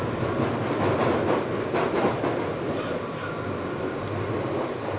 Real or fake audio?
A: real